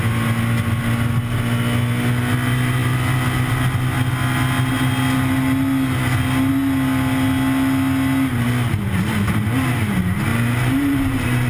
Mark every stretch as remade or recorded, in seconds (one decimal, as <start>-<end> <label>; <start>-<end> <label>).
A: 0.0-11.5 recorded